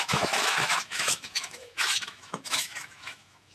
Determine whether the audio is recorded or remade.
remade